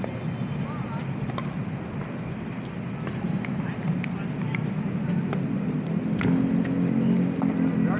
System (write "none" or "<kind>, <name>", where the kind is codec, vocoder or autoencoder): none